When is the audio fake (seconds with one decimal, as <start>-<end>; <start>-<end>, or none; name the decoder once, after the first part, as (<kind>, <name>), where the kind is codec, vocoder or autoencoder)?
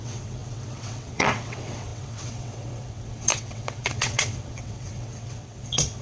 0.0-6.0 (vocoder, WaveNeXt)